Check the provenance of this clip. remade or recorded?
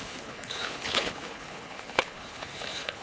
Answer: remade